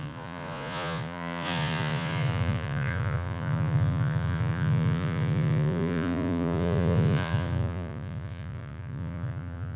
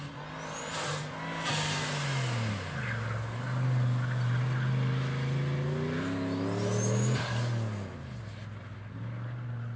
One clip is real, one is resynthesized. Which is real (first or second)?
second